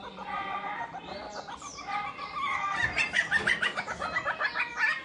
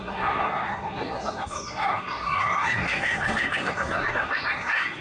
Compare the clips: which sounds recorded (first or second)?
first